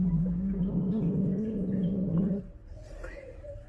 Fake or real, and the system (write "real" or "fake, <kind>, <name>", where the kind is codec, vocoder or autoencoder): fake, vocoder, BigVGAN v2